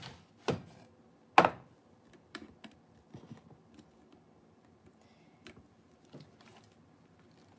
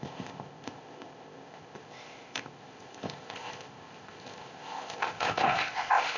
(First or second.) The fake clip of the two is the second